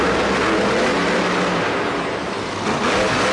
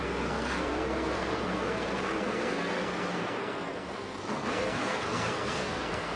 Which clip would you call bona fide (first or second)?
first